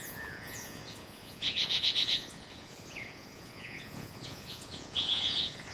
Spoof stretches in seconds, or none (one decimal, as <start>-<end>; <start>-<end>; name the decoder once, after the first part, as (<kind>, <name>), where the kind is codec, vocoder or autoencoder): 0.0-5.7 (vocoder, Vocos)